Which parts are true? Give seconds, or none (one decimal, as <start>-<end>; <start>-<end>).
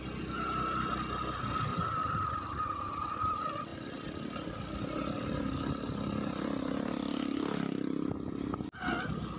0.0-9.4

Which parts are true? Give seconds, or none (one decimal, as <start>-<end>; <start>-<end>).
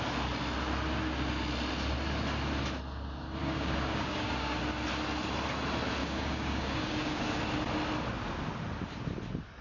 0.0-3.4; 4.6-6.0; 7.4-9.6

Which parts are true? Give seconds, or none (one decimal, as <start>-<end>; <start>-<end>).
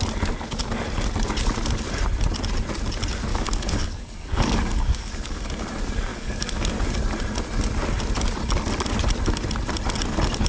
0.0-3.3; 5.5-6.1; 6.7-10.5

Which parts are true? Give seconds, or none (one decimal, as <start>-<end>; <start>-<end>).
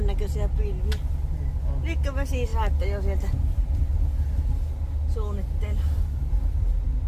0.0-7.1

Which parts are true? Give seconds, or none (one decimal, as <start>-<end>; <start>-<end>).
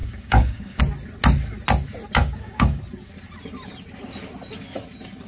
0.8-2.2; 2.8-5.3